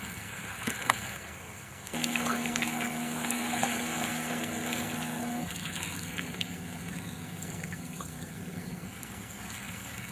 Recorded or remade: remade